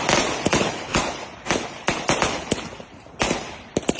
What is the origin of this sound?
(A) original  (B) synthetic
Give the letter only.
A